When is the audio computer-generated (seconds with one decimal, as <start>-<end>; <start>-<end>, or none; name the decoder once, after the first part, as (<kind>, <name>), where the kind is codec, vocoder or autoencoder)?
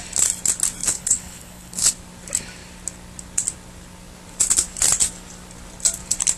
0.8-1.9 (codec, HILCodec)